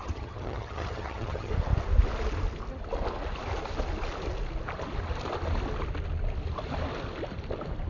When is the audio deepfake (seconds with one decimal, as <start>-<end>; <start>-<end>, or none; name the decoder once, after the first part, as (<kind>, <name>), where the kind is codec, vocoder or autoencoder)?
0.0-1.5 (vocoder, HiFi-GAN)